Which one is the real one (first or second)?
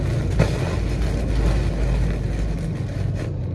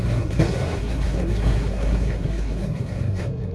first